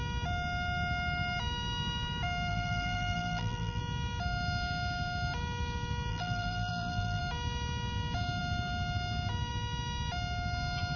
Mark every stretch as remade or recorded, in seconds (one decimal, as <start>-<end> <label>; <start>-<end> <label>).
0.0-2.5 recorded; 2.5-3.8 remade; 3.8-6.1 recorded; 6.1-7.2 remade; 7.2-11.0 recorded